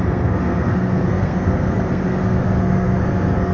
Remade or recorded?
remade